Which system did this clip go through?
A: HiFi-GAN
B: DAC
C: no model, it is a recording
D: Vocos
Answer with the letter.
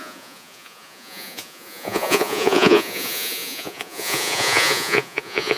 D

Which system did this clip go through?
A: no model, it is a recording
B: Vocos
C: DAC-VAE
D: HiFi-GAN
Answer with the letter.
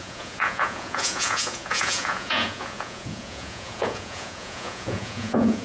B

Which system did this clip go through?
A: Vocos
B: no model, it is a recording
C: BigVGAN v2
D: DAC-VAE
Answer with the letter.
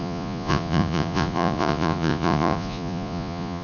A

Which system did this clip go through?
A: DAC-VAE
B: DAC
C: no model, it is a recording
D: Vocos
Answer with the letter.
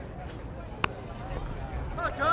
C